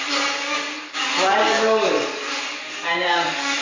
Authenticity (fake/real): fake